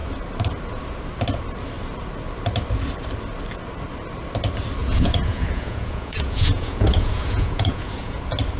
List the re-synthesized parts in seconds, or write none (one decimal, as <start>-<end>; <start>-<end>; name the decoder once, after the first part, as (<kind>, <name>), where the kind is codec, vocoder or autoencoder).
4.8-8.2 (vocoder, Vocos)